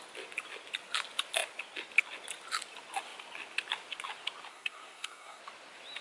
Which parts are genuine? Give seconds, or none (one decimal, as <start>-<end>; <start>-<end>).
0.0-4.5; 5.4-6.0

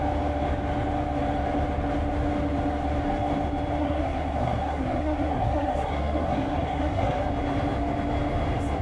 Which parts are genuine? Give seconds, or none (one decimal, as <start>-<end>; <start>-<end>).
0.0-3.8; 7.3-8.8